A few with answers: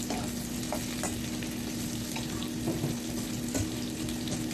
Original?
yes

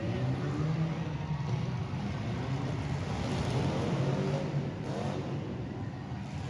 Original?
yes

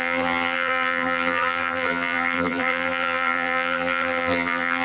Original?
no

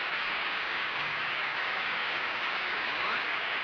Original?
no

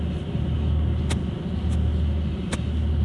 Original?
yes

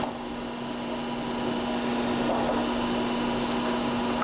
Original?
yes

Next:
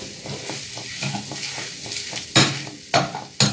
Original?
yes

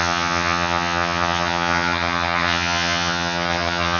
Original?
no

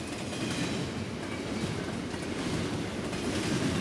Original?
yes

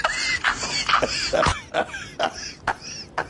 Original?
yes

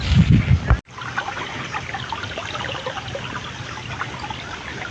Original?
yes